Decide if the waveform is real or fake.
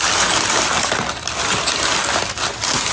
real